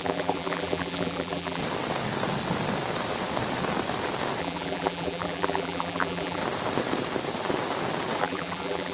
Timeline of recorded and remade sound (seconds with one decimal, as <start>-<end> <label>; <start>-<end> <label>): 0.0-1.6 remade; 1.6-4.4 recorded; 4.4-6.4 remade; 6.4-8.2 recorded; 8.2-8.9 remade